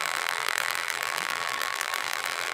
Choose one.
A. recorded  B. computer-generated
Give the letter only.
B